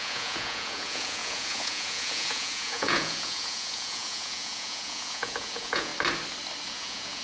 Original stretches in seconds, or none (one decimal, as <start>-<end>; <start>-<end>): 5.9-6.7